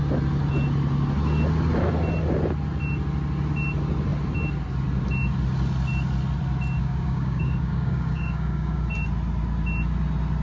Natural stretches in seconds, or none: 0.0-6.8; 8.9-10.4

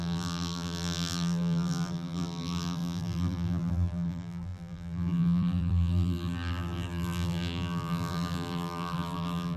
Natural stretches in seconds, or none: none

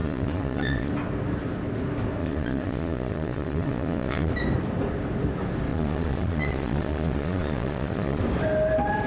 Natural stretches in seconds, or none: 0.9-2.2; 4.3-5.7; 8.2-9.1

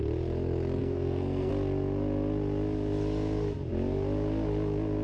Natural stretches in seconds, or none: 0.0-0.8; 1.5-5.0